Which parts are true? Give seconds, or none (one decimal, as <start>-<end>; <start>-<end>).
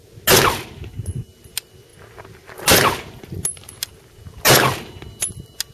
0.0-5.7